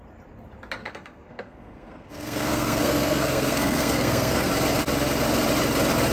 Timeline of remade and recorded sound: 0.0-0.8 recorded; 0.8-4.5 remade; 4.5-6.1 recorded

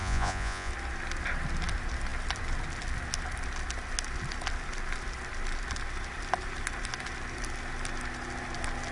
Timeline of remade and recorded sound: 0.0-0.7 remade; 0.7-8.9 recorded

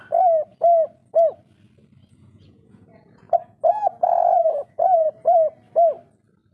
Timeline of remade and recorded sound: 0.0-2.0 recorded; 2.0-5.1 remade; 5.1-6.5 recorded

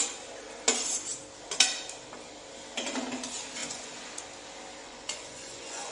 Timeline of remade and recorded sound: 0.0-3.6 recorded; 3.6-4.1 remade; 4.1-4.8 recorded; 4.8-5.9 remade

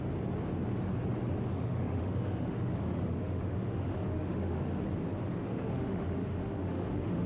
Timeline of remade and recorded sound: 0.0-1.5 recorded; 1.5-4.8 remade; 4.8-5.5 recorded; 5.5-7.3 remade

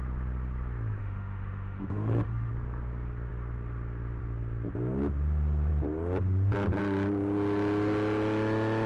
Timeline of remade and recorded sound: 0.0-1.0 recorded; 1.0-2.5 remade; 2.5-8.9 recorded